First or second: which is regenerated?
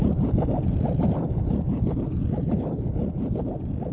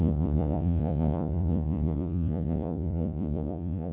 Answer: second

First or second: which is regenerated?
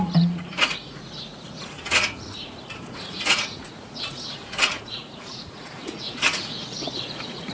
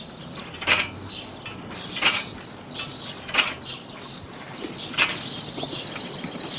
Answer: first